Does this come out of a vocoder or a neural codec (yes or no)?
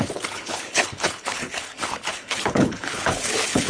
yes